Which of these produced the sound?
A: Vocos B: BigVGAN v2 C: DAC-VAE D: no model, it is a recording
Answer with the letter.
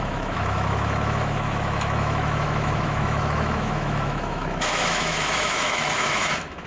C